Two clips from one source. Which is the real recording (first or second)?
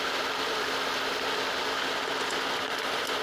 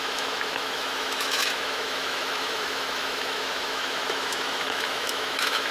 first